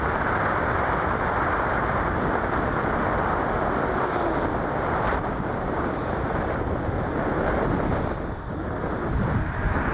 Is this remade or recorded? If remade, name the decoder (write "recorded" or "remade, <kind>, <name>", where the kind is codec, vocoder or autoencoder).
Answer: recorded